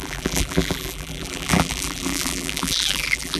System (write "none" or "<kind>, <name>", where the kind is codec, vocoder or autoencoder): vocoder, BigVGAN v2